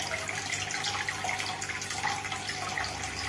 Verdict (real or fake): real